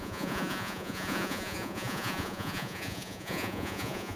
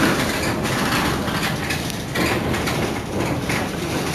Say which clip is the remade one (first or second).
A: first